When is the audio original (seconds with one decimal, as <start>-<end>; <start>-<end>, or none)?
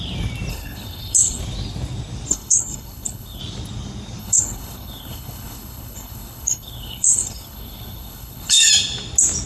0.0-0.5; 1.4-2.3; 3.4-4.2; 8.7-9.5